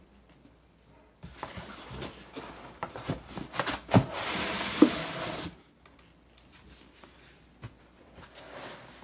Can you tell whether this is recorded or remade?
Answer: recorded